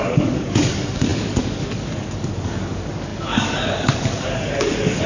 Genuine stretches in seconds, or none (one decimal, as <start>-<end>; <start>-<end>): none